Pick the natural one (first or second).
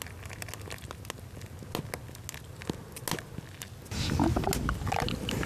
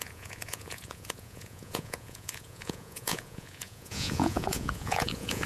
first